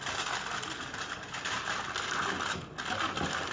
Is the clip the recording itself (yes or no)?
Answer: yes